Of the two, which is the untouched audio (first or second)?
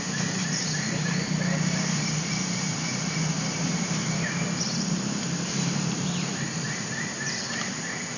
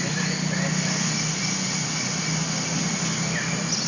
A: second